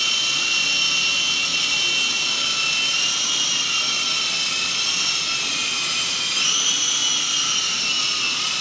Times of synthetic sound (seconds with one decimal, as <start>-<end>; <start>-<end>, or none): none